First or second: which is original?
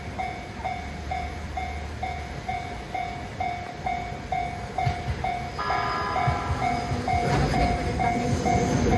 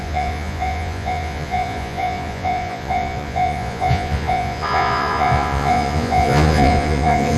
first